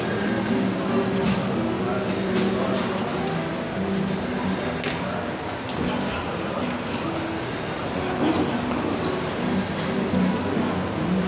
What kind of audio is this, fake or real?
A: real